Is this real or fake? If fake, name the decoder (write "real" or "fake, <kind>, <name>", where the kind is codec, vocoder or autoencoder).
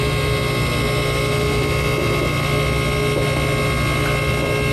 real